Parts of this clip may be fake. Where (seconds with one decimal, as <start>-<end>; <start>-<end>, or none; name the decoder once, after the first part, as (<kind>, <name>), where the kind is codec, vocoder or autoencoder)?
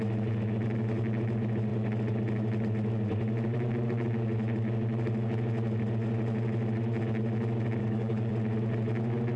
7.8-8.3 (codec, DAC)